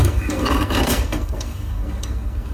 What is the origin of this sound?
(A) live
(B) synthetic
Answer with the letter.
B